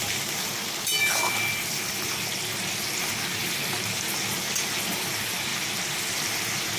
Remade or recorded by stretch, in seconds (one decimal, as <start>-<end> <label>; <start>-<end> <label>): 0.0-6.8 recorded